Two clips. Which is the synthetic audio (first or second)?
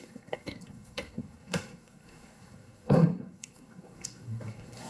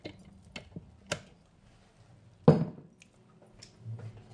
first